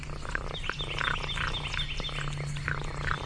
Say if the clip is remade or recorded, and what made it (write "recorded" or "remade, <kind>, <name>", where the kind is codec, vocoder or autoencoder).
recorded